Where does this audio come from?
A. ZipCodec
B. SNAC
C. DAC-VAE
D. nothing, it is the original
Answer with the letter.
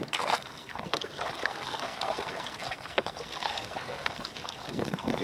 B